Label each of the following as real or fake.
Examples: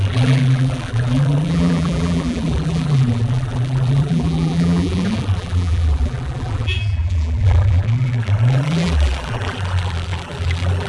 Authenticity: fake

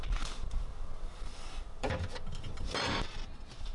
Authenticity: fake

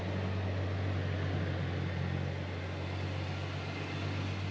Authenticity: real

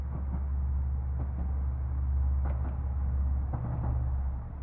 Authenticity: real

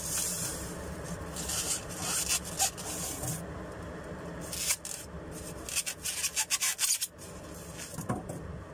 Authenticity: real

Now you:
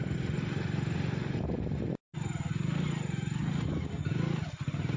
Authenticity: real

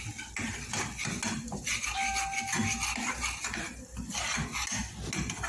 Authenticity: real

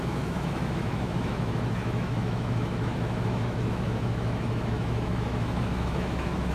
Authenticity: fake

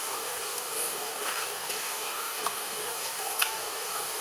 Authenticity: fake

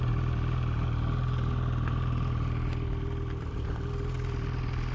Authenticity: real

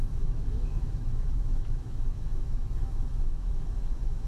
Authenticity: fake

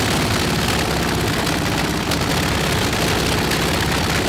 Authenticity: real